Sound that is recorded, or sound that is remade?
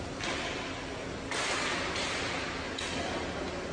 recorded